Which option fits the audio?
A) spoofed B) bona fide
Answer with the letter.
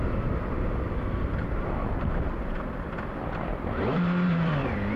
A